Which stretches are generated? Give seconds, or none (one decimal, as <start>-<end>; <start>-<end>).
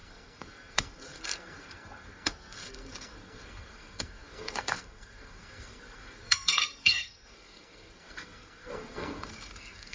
0.0-9.9